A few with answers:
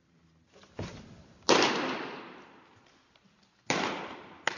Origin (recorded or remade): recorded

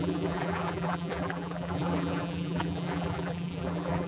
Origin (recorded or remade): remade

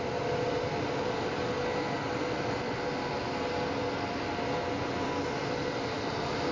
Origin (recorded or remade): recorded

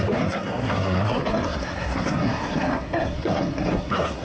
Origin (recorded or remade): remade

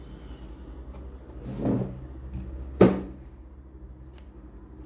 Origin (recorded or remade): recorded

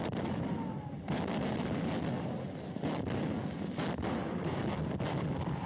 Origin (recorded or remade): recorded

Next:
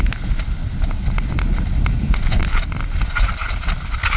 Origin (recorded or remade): recorded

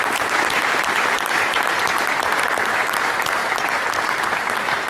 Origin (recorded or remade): remade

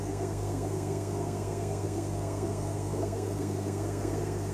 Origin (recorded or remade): remade